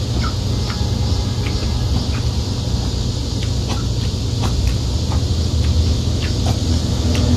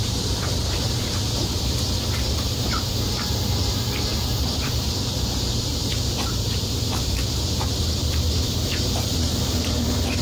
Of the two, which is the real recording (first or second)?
first